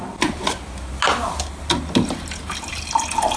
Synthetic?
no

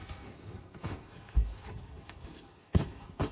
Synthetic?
yes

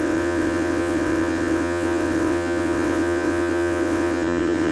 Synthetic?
yes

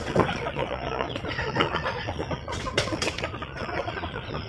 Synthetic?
yes